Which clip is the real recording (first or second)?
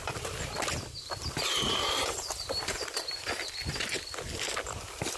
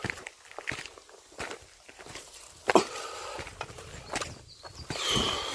second